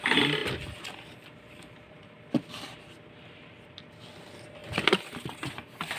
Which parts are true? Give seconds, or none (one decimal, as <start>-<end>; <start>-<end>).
0.0-6.0